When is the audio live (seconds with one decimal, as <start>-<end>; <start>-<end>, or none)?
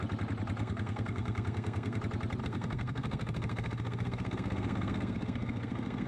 0.0-0.6; 2.0-2.4